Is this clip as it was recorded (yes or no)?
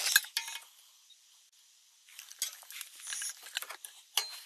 yes